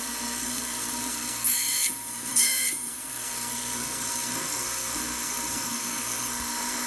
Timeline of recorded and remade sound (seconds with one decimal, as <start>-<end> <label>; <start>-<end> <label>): 0.0-6.9 remade